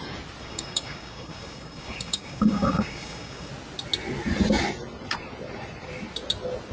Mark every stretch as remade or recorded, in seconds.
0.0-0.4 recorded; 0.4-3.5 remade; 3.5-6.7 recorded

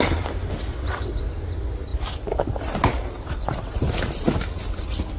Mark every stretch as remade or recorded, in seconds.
0.0-0.7 recorded; 0.7-1.2 remade; 1.2-5.2 recorded